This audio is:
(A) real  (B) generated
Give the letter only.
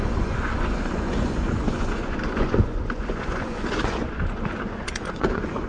B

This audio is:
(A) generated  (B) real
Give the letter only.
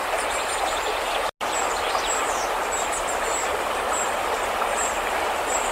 B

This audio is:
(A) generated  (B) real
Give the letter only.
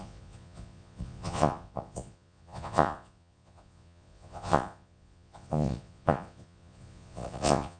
A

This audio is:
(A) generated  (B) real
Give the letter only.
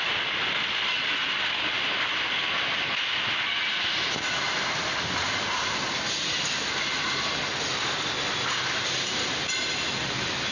B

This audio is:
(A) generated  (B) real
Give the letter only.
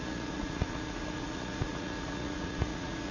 A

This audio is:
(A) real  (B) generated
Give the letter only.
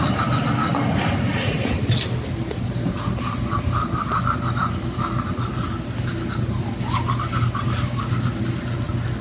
A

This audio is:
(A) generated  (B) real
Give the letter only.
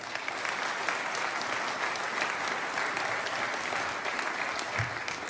B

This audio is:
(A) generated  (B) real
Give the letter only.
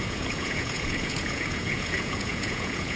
A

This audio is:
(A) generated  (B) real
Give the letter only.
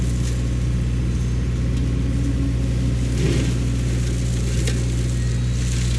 B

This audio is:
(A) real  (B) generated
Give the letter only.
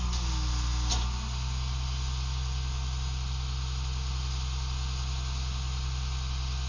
A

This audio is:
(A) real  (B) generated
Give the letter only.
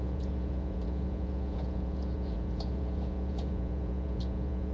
B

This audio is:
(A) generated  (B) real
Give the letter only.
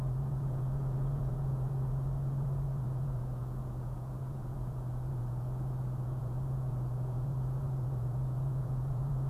A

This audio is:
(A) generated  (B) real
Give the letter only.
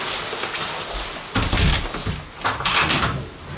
B